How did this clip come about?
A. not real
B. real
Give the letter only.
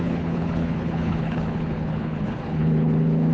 A